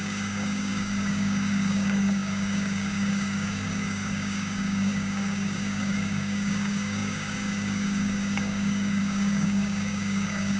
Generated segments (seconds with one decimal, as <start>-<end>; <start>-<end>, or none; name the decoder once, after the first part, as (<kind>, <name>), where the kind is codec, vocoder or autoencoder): 0.0-10.6 (codec, DAC)